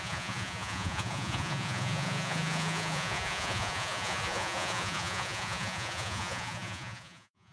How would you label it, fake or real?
fake